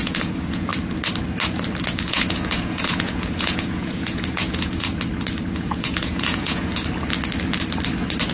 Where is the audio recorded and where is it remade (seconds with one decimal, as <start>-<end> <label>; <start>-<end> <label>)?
0.0-0.7 remade; 0.7-1.9 recorded; 1.9-4.9 remade; 4.9-5.5 recorded; 5.5-6.8 remade; 6.8-8.3 recorded